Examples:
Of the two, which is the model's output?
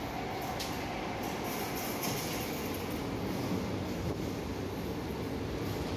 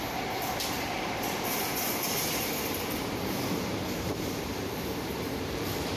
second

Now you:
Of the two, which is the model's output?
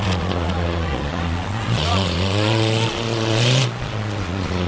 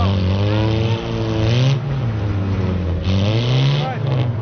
first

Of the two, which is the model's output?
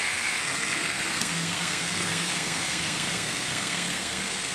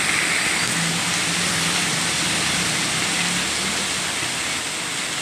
first